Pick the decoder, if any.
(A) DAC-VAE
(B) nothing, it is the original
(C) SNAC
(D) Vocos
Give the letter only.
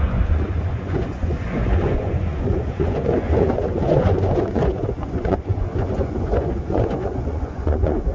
D